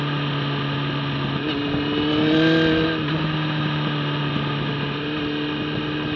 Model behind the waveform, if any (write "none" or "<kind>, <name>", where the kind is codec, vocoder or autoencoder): none